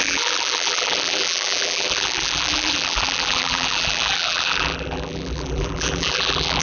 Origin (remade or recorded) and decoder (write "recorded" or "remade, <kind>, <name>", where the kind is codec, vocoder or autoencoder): remade, vocoder, BigVGAN v2